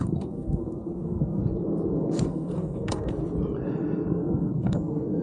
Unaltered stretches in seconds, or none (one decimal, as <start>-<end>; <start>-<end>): 1.4-2.1; 3.2-4.1